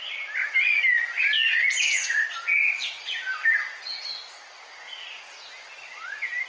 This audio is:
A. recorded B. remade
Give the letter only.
A